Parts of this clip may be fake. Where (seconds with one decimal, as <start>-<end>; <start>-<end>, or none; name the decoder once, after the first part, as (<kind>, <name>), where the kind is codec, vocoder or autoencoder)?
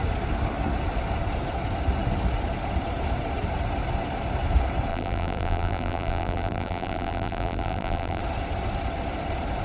4.9-8.2 (vocoder, BigVGAN v2)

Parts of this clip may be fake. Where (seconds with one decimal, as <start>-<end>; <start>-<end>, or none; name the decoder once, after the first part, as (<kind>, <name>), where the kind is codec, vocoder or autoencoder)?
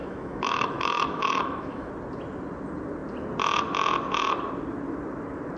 0.0-1.9 (autoencoder, DAC-VAE)